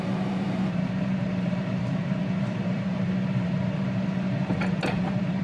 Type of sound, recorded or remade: remade